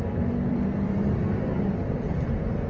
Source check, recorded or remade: remade